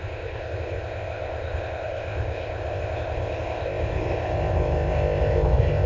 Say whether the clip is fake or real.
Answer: fake